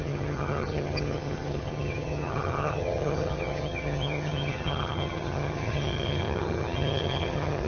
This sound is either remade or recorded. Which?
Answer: remade